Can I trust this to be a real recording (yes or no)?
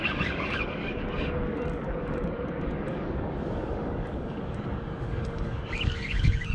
no